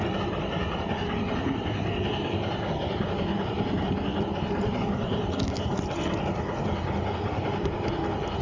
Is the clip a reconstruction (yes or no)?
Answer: no